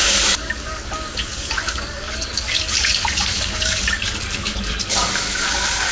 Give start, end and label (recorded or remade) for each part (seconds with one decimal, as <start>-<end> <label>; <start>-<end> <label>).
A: 0.0-5.9 remade